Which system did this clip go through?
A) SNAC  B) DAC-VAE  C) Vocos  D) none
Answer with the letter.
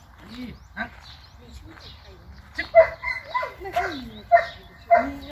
D